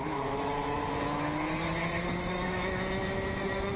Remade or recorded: remade